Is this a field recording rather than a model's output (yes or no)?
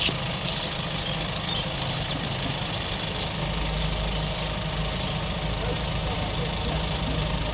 yes